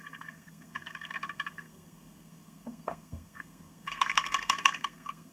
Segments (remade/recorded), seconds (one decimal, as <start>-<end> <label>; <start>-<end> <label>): 0.0-5.3 remade

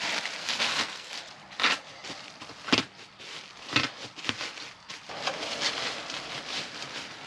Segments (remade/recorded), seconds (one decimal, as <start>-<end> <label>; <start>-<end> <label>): 0.0-0.4 recorded; 0.4-1.1 remade; 1.1-7.3 recorded

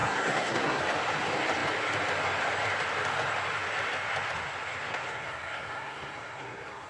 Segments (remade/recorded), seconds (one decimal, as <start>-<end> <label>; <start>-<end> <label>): 0.0-0.8 remade; 0.8-4.9 recorded; 4.9-6.9 remade

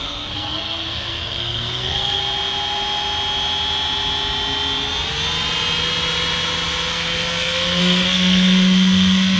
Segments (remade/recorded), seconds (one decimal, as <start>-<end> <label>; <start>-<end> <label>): 0.0-2.2 remade; 2.2-6.9 recorded; 6.9-9.4 remade

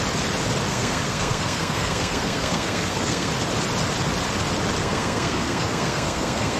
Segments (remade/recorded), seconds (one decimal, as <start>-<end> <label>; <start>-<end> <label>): 0.0-0.7 recorded; 0.7-3.3 remade; 3.3-4.8 recorded; 4.8-6.6 remade

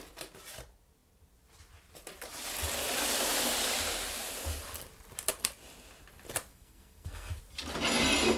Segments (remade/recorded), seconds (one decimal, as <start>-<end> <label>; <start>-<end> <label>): 0.0-6.5 recorded; 6.5-7.4 remade; 7.4-8.4 recorded

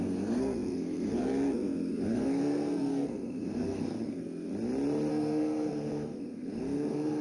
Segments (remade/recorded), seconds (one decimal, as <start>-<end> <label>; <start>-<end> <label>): 0.0-4.5 remade; 4.5-5.1 recorded; 5.1-7.2 remade

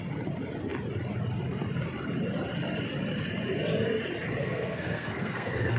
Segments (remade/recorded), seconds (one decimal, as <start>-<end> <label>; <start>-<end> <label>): 0.0-4.4 recorded; 4.4-5.8 remade